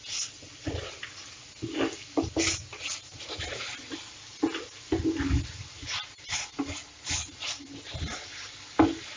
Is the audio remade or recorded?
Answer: recorded